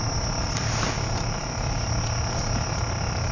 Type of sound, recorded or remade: recorded